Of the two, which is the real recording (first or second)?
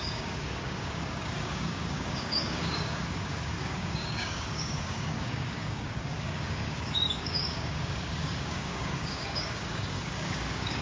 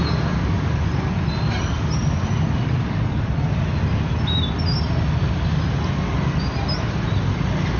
second